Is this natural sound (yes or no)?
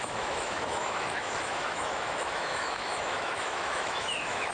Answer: no